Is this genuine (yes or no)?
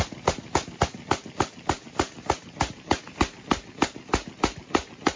yes